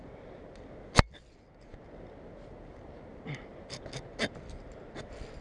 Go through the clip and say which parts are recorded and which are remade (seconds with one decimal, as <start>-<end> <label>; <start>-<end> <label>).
0.0-5.4 recorded